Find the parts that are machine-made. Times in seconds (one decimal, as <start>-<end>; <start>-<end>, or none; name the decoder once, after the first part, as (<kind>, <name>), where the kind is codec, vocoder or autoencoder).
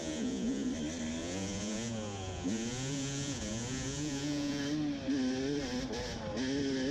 0.0-0.7 (vocoder, Vocos); 1.2-4.6